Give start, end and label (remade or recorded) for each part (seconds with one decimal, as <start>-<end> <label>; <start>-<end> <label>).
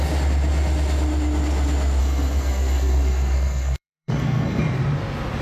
0.0-2.0 recorded; 2.0-4.6 remade; 4.6-5.4 recorded